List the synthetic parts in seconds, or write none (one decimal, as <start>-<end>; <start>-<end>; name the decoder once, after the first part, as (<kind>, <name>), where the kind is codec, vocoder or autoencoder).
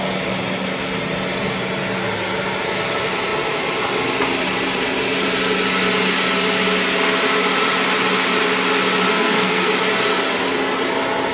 9.1-9.7 (codec, SNAC)